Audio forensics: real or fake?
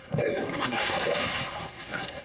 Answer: fake